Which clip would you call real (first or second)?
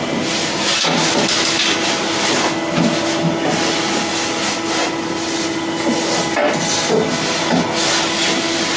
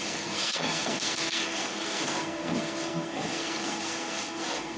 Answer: first